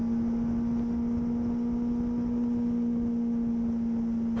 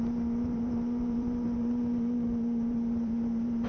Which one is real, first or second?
first